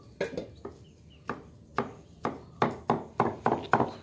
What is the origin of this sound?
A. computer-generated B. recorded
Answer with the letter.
B